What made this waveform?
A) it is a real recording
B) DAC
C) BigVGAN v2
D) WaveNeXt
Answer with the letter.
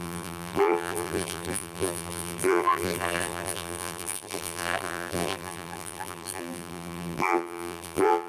C